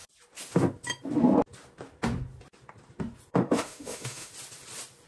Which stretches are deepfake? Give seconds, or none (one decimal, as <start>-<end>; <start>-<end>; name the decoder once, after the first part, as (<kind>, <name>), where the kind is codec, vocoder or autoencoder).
3.3-4.3 (autoencoder, DAC-VAE)

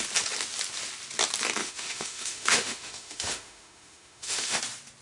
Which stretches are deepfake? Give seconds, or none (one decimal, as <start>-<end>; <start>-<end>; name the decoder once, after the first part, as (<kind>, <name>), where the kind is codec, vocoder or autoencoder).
1.6-4.6 (autoencoder, DAC-VAE)

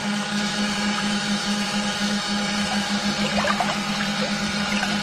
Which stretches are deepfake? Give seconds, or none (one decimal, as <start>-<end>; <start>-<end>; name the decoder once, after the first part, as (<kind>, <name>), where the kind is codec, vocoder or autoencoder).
0.0-3.0 (autoencoder, DAC-VAE)